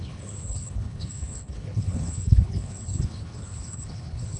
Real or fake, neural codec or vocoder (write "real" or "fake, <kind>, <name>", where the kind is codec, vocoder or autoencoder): fake, codec, HILCodec